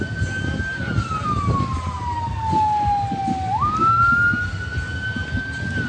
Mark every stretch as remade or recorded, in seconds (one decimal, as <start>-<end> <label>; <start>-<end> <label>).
0.0-5.9 recorded